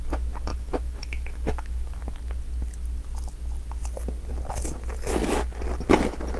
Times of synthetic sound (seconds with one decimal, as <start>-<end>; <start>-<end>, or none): 0.5-2.0